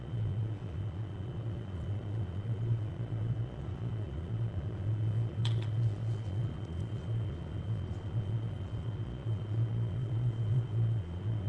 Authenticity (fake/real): fake